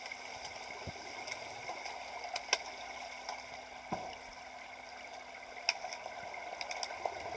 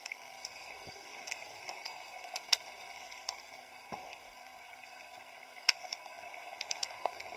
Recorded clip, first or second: first